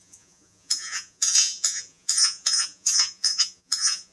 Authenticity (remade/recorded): remade